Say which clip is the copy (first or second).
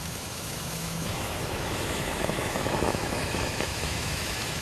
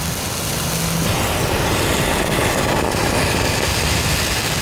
first